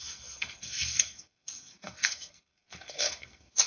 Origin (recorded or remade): remade